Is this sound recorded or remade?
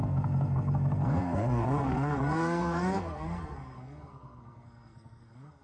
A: remade